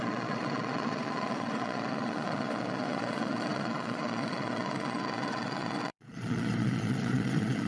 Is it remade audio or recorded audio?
remade